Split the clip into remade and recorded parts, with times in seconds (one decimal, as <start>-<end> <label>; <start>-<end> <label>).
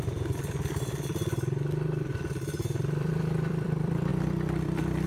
0.0-5.1 remade